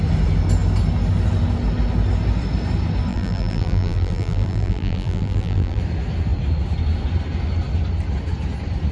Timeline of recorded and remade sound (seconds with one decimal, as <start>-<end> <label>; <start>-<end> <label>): 0.0-3.1 recorded; 3.1-5.8 remade; 5.8-8.9 recorded